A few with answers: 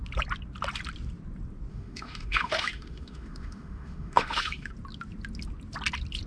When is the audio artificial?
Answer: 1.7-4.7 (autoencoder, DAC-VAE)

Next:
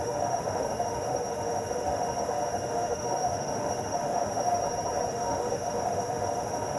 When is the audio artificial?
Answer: 0.0-4.6 (autoencoder, DAC-VAE); 5.1-6.8

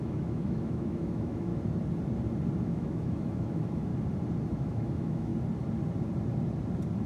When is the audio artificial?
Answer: 0.0-1.5 (autoencoder, DAC-VAE); 2.6-3.9; 4.5-5.3